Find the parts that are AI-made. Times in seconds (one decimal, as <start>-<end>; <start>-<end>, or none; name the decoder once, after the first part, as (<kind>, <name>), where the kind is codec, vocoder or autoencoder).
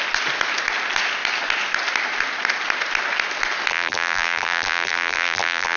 3.7-5.8 (vocoder, BigVGAN v2)